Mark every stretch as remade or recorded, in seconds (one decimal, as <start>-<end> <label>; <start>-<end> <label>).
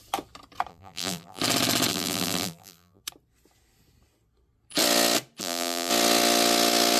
0.0-0.7 recorded; 0.7-1.4 remade; 1.4-1.9 recorded; 1.9-3.0 remade; 3.0-5.4 recorded; 5.4-5.9 remade; 5.9-7.0 recorded